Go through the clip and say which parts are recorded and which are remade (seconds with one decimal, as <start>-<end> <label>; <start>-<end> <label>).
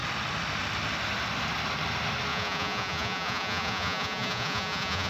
0.0-2.3 recorded; 2.3-5.1 remade